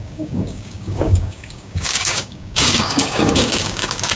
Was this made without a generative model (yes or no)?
no